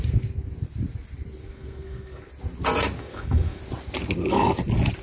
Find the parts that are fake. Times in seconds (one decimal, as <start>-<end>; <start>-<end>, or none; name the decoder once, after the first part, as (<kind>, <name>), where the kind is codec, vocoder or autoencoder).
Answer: 1.4-2.3 (codec, SNAC); 3.0-3.6